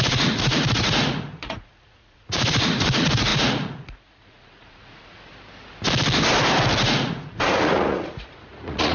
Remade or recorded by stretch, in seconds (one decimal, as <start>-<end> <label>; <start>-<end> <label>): 0.0-5.3 remade; 5.3-6.8 recorded; 6.8-8.9 remade